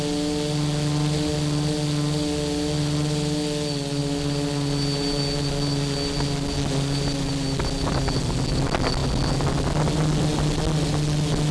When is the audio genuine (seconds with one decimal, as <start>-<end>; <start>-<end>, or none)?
0.0-11.5